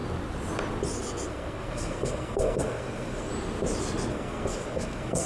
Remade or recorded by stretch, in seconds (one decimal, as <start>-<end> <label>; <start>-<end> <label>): 0.0-1.3 recorded; 1.3-3.3 remade; 3.3-4.1 recorded; 4.1-5.3 remade

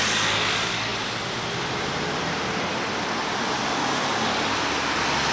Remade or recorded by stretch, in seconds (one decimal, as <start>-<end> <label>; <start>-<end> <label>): 0.0-5.3 recorded

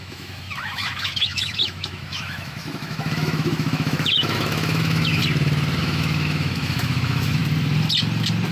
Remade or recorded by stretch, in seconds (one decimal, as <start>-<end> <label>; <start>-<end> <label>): 0.0-5.2 remade; 5.2-5.8 recorded; 5.8-7.4 remade; 7.4-8.5 recorded

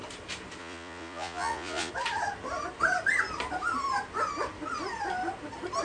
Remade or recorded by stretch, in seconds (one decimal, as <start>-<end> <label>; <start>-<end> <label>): 0.0-0.6 recorded; 0.6-1.9 remade; 1.9-5.8 recorded